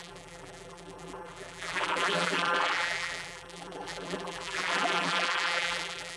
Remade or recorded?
remade